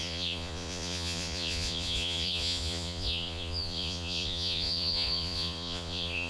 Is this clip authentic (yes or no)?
no